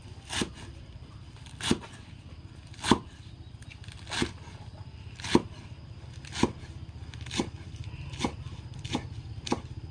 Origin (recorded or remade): recorded